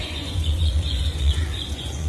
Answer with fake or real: fake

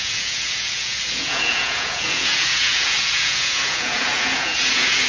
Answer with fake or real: fake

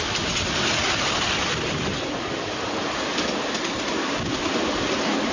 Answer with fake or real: real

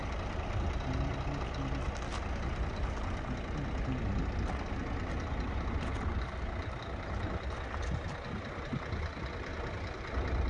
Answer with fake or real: real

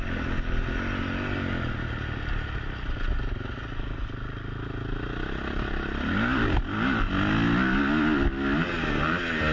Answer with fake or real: real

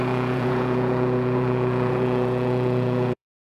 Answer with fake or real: fake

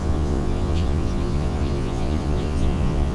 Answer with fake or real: fake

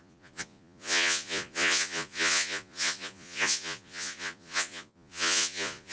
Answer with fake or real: fake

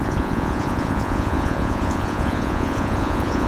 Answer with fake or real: fake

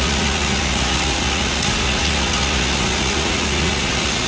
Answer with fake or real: fake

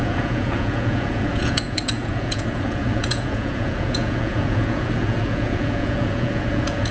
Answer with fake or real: fake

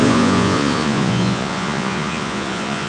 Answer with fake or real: fake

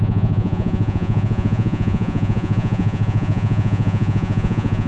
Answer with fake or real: fake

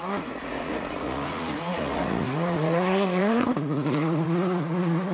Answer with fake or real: fake